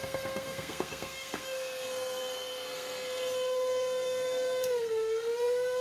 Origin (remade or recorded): remade